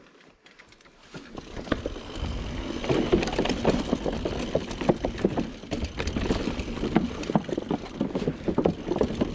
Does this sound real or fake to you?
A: real